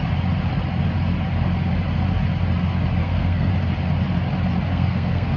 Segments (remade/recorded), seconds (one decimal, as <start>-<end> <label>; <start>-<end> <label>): 0.0-3.0 recorded; 3.0-3.5 remade; 3.5-4.7 recorded; 4.7-5.4 remade

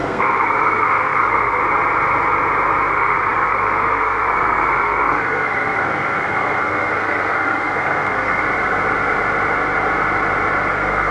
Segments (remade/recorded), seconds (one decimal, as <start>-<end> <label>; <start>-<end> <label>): 0.0-1.6 remade; 1.6-2.9 recorded; 2.9-8.4 remade; 8.4-10.7 recorded; 10.7-11.1 remade

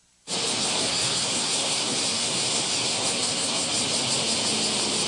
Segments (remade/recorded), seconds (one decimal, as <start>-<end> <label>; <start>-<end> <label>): 0.0-0.6 recorded; 0.6-3.7 remade; 3.7-5.1 recorded

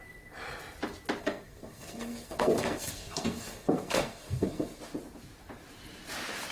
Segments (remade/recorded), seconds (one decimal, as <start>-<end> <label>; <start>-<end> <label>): 0.0-1.2 recorded; 1.2-4.8 remade; 4.8-6.5 recorded

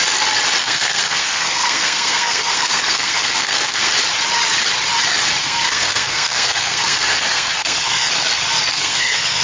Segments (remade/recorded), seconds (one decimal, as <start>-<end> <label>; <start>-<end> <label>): 0.0-0.6 recorded; 0.6-3.9 remade; 3.9-5.4 recorded; 5.4-8.1 remade; 8.1-8.7 recorded; 8.7-9.4 remade